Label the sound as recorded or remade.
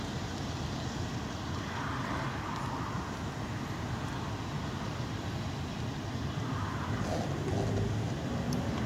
recorded